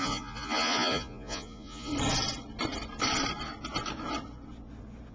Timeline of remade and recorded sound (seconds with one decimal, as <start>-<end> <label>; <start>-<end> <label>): 0.0-1.9 remade; 1.9-5.1 recorded